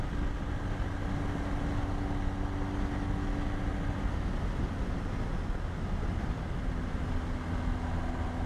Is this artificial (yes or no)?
no